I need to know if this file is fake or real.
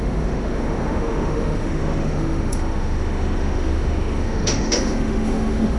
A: fake